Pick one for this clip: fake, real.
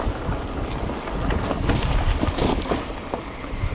real